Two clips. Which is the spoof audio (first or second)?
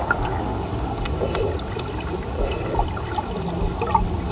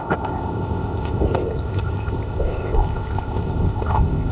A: second